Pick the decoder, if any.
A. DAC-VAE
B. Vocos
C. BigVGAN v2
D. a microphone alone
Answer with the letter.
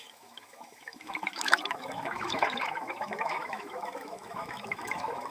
A